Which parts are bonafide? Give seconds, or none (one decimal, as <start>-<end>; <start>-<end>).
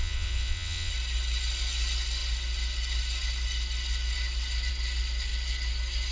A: 0.9-6.1